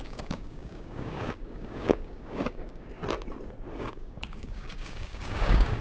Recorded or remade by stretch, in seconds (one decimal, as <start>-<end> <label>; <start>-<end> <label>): 0.0-3.0 remade; 3.0-3.8 recorded; 3.8-5.8 remade